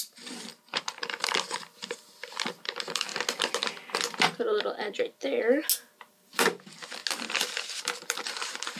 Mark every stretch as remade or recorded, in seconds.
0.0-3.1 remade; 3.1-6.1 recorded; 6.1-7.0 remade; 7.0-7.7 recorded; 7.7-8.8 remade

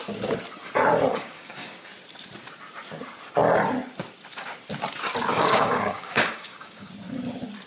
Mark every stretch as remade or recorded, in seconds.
0.0-1.1 recorded; 1.1-1.9 remade; 1.9-5.3 recorded; 5.3-6.9 remade; 6.9-7.7 recorded

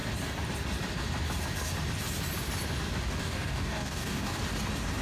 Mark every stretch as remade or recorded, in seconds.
0.0-3.2 recorded; 3.2-4.4 remade; 4.4-5.0 recorded

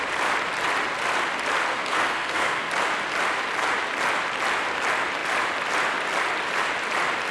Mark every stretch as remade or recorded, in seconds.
0.0-1.7 recorded; 1.7-2.7 remade; 2.7-7.3 recorded

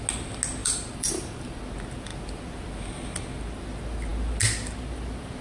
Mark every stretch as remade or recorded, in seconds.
0.0-0.6 recorded; 0.6-1.6 remade; 1.6-5.4 recorded